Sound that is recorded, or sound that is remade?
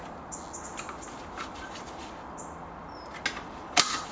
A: recorded